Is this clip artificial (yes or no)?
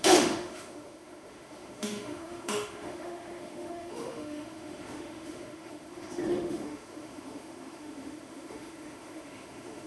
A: yes